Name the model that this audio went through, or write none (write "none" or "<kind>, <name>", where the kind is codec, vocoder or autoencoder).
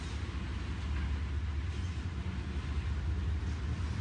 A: none